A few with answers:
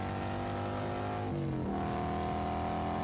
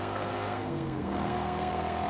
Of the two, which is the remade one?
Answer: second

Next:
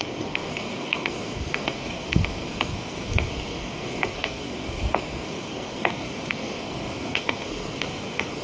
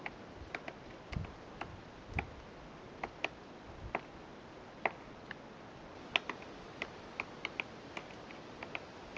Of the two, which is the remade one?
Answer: first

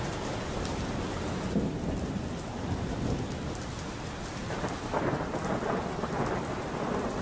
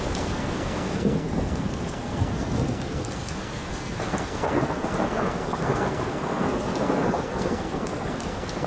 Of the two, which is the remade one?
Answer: second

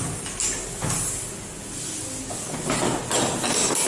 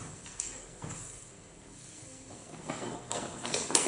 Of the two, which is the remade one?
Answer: second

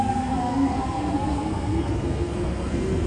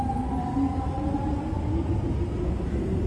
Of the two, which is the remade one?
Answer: first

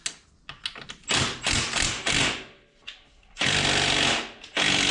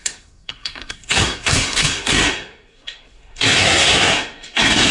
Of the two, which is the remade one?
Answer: second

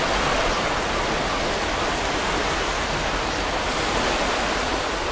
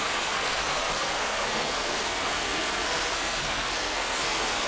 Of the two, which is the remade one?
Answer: second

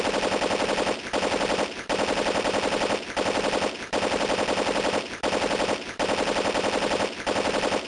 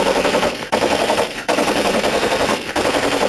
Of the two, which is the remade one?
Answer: second